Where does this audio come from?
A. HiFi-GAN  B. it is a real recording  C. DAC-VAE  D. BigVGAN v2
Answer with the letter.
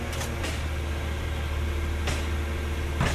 B